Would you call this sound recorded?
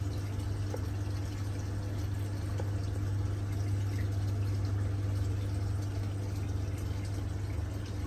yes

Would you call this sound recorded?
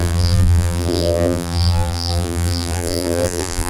no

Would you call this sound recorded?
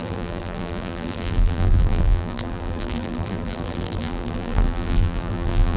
no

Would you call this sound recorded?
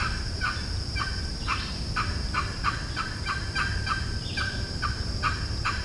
no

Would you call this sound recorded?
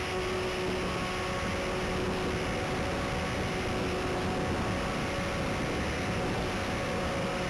yes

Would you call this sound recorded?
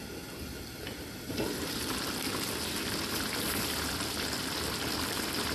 no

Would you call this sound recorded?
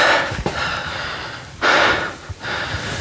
no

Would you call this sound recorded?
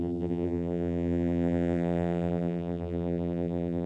no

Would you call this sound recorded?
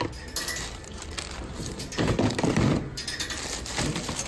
yes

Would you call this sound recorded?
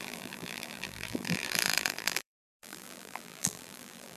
no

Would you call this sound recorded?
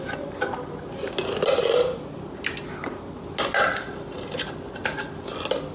yes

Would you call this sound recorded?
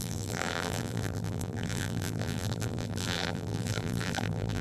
no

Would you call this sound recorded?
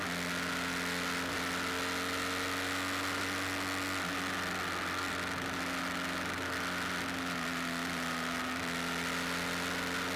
yes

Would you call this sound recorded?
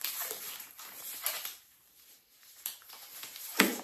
no